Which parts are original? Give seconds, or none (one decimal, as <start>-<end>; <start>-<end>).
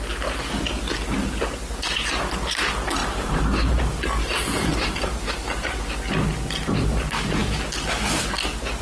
0.0-3.0; 5.8-8.8